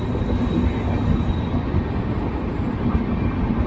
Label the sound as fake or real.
real